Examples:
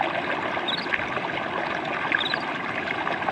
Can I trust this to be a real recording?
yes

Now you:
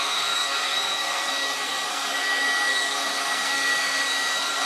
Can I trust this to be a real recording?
no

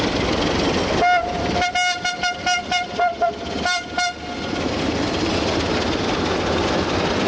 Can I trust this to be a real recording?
yes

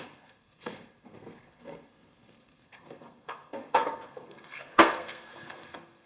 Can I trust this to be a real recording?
no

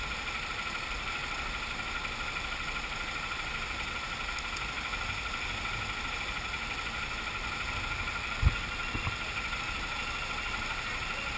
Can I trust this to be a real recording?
yes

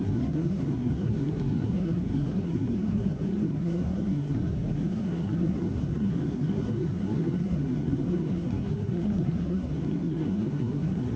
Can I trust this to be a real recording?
no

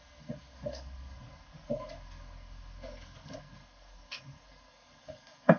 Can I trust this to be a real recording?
no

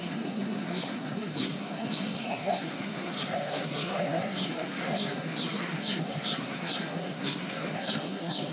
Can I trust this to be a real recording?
no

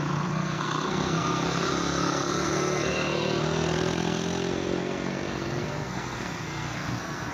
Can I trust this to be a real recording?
no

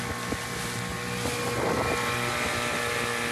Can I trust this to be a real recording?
yes